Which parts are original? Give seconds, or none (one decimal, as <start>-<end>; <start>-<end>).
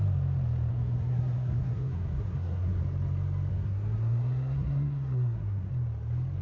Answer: 0.0-0.7; 2.8-3.5; 5.7-6.4